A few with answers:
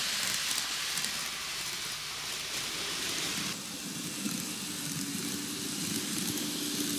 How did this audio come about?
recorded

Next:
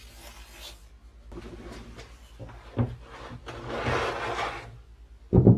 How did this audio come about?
recorded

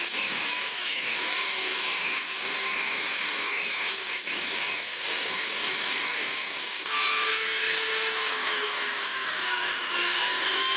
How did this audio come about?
remade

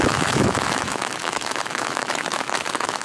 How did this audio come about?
remade